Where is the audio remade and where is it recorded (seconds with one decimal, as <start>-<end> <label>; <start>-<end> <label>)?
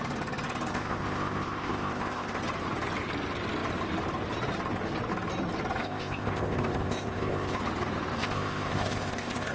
0.0-0.7 recorded; 0.7-2.4 remade; 2.4-5.8 recorded; 5.8-7.6 remade; 7.6-8.2 recorded; 8.2-9.5 remade